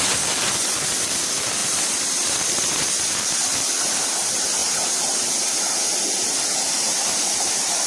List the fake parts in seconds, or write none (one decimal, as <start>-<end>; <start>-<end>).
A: 1.6-2.9; 6.5-7.9